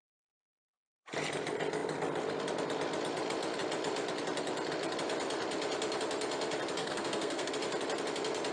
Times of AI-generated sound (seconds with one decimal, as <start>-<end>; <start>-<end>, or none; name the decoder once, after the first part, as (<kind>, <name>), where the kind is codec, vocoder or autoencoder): 6.8-7.5 (codec, SNAC)